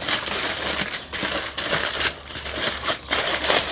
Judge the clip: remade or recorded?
recorded